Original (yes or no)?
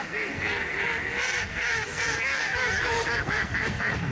no